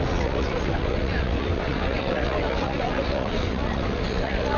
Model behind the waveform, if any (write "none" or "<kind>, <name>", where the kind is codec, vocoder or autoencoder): vocoder, WaveNeXt